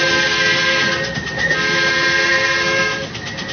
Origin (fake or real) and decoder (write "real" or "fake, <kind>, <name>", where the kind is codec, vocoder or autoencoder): real